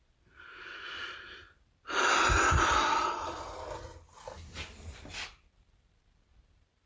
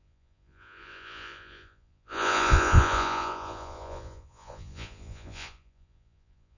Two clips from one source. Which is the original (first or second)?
first